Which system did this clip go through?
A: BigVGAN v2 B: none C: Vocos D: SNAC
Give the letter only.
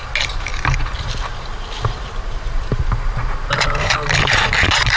B